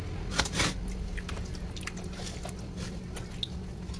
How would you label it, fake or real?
real